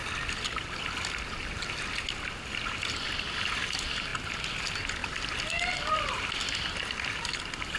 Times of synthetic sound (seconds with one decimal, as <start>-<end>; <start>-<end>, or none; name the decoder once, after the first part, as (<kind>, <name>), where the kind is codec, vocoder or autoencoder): none